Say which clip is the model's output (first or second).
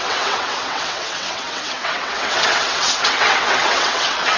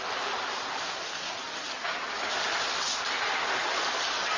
first